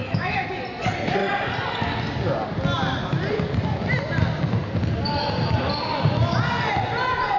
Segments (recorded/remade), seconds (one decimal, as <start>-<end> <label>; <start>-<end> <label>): 0.0-0.5 remade; 0.5-7.4 recorded